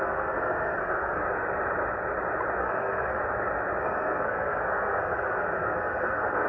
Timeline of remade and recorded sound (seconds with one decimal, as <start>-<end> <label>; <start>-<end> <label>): 0.0-1.2 remade; 1.2-2.6 recorded; 2.6-3.2 remade; 3.2-3.8 recorded; 3.8-6.5 remade